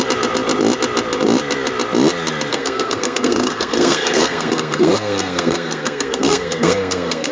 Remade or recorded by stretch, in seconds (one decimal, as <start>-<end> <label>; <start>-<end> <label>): 0.0-2.5 recorded; 2.5-7.3 remade